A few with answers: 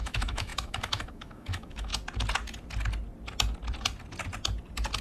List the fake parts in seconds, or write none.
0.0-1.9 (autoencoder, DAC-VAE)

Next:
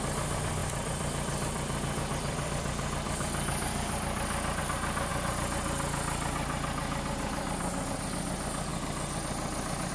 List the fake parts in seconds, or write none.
0.6-4.6 (vocoder, BigVGAN v2)

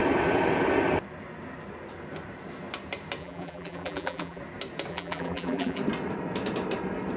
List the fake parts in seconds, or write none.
3.2-4.4 (vocoder, BigVGAN v2); 4.9-5.8

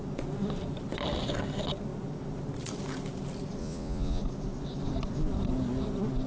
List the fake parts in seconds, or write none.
3.6-4.2 (vocoder, Vocos)

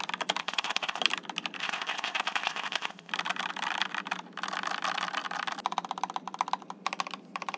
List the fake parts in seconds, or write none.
0.4-1.0 (codec, ZipCodec); 1.6-3.1

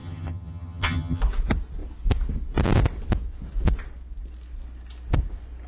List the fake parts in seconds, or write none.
0.0-1.2 (vocoder, HiFi-GAN)

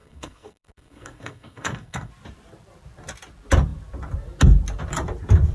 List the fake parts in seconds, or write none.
0.0-2.1 (codec, SNAC)

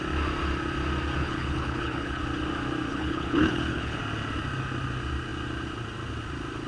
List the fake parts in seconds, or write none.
1.2-2.2 (codec, HILCodec); 2.9-4.0